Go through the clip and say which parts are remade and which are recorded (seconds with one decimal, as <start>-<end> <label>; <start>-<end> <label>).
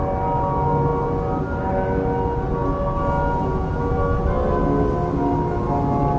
0.0-6.2 recorded